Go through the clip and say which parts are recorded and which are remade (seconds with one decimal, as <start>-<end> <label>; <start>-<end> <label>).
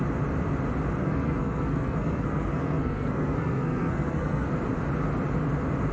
0.0-1.0 recorded; 1.0-4.5 remade; 4.5-5.9 recorded